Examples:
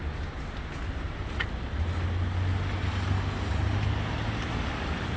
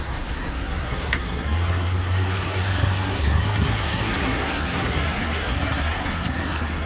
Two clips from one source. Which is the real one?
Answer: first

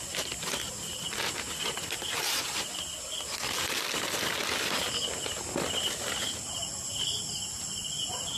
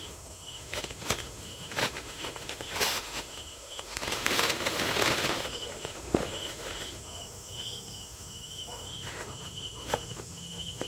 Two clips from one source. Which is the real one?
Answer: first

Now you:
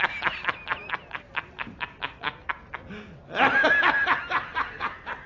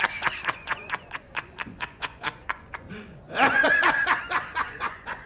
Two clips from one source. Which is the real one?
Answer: first